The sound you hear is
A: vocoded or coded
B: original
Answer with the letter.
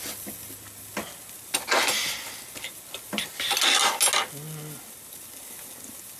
B